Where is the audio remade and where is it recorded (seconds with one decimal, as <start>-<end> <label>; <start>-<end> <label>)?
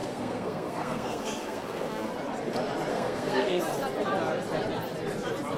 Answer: 0.0-2.1 remade; 2.1-2.9 recorded; 2.9-3.6 remade; 3.6-5.6 recorded